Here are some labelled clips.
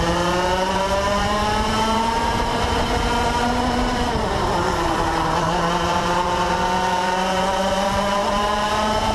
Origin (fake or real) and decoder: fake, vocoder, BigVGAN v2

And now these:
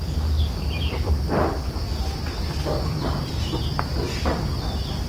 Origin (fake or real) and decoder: real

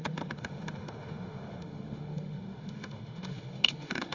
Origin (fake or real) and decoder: fake, autoencoder, DAC-VAE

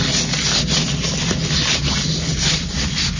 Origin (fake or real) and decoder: real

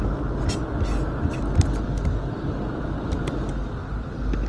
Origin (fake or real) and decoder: real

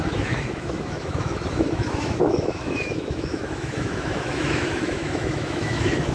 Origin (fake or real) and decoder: fake, autoencoder, DAC-VAE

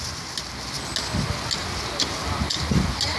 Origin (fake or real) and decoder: real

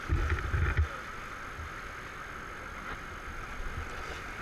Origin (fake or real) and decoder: real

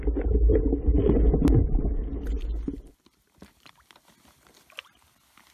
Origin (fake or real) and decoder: real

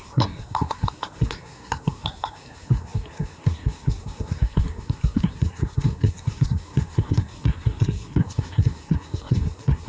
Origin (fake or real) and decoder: fake, codec, SNAC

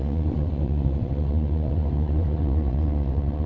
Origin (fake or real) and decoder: fake, vocoder, WaveNeXt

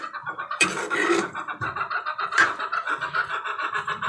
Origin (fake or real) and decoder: fake, vocoder, BigVGAN v2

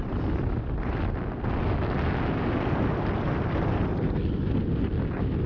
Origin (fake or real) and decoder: real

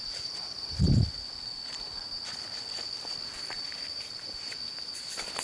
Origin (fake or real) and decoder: real